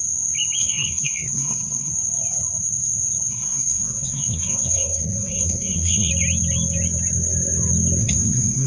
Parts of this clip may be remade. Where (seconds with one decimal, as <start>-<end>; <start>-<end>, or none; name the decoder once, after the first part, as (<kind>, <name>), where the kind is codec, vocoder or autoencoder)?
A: 0.6-1.9 (codec, SNAC); 3.3-6.1; 8.0-8.7